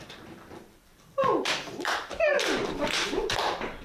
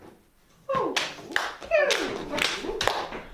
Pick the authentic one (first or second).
second